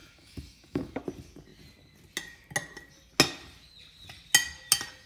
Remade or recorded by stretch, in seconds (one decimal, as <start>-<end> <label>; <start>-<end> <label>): 0.0-1.0 remade; 1.0-5.1 recorded